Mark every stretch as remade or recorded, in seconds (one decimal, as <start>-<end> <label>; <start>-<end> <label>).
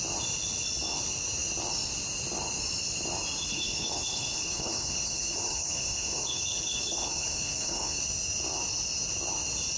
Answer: 0.0-3.5 recorded; 3.5-8.0 remade; 8.0-9.8 recorded